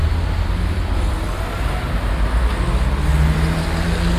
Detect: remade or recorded recorded